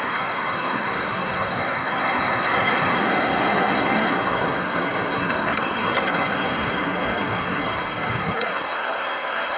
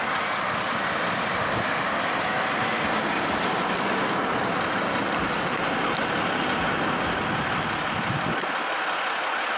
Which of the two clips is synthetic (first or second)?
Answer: first